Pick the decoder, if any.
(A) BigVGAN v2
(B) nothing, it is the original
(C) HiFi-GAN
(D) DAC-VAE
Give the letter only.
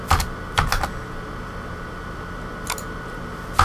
B